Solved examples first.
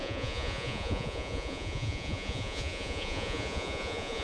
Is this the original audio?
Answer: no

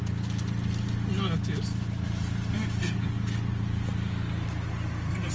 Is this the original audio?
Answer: yes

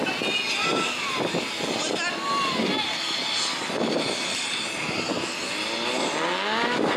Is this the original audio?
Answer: yes